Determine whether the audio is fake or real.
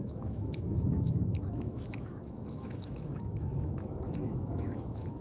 fake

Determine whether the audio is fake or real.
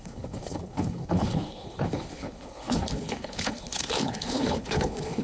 fake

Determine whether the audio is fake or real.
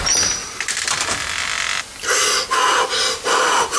real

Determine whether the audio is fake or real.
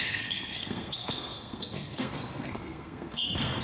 fake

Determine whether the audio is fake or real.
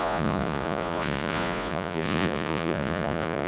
fake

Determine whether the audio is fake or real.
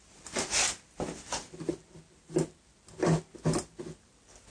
real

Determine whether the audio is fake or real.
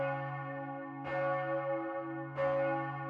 real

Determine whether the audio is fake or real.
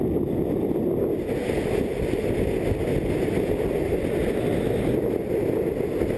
real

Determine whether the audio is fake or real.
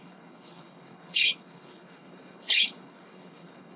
fake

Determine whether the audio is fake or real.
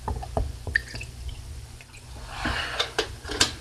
fake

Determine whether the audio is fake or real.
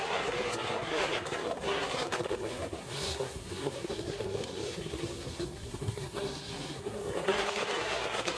fake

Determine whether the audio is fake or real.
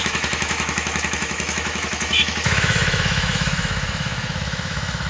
fake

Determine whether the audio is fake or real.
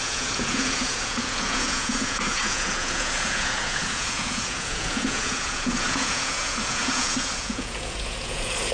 fake